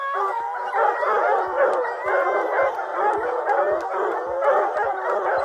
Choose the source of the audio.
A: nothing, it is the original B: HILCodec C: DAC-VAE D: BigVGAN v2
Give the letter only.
A